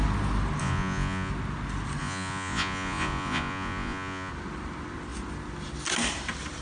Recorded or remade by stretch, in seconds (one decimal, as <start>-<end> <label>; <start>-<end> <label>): 0.0-0.6 recorded; 0.6-1.3 remade; 1.3-2.0 recorded; 2.0-4.3 remade; 4.3-6.6 recorded